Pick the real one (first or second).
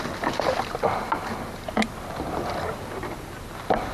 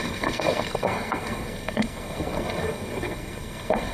first